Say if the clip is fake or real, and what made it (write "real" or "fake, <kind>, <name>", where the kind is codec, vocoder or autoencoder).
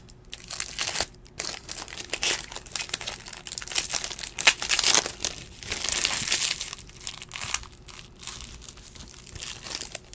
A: real